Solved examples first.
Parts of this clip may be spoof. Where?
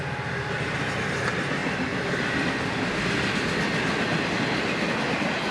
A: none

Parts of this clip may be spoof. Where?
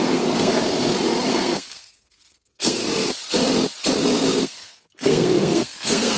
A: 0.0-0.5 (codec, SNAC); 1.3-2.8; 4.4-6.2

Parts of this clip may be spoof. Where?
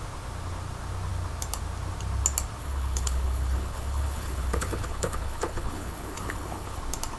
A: 2.6-6.8 (codec, HILCodec)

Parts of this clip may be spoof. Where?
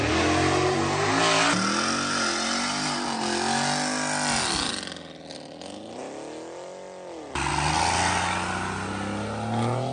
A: none